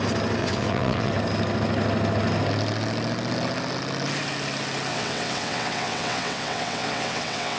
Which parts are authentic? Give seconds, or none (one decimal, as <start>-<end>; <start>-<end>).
0.0-0.4; 1.1-4.9